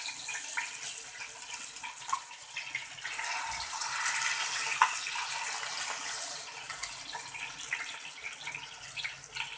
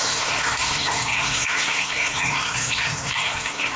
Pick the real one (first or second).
first